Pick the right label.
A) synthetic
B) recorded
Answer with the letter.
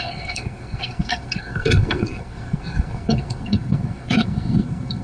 A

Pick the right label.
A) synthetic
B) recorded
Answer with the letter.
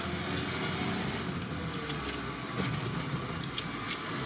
B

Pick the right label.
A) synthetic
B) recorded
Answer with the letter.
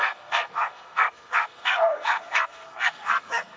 A